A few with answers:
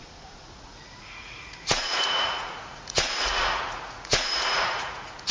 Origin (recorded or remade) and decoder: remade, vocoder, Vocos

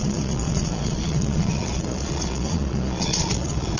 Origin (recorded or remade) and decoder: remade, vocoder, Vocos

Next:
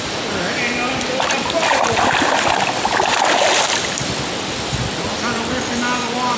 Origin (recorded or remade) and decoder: recorded